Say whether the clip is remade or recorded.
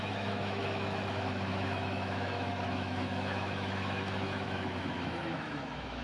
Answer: remade